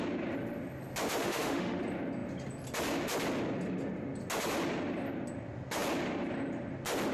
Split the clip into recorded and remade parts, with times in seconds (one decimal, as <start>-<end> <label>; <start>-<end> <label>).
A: 0.0-1.2 recorded; 1.2-1.8 remade; 1.8-7.1 recorded